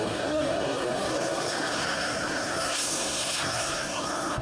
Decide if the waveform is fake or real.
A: fake